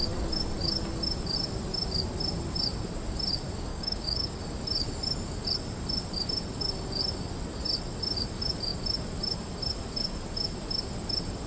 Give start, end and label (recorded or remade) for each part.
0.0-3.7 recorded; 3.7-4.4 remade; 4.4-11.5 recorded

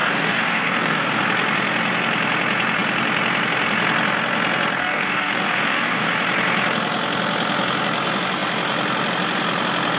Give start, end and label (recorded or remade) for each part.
0.0-1.2 remade; 1.2-4.8 recorded; 4.8-6.1 remade; 6.1-10.0 recorded